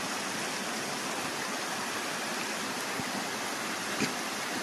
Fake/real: real